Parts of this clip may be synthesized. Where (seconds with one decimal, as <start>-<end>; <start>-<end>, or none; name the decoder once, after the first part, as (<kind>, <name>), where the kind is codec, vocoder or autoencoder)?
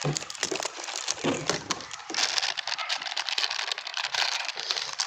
2.8-3.4 (vocoder, BigVGAN v2); 3.9-4.5